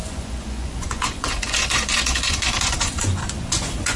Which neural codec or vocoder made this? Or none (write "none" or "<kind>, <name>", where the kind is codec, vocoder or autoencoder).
vocoder, Vocos